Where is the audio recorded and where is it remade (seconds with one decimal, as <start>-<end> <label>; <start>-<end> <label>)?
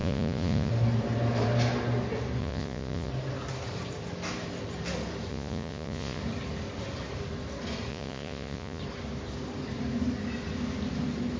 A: 0.0-0.7 remade; 0.7-2.4 recorded; 2.4-3.1 remade; 3.1-5.3 recorded; 5.3-6.2 remade; 6.2-7.9 recorded; 7.9-8.8 remade; 8.8-11.4 recorded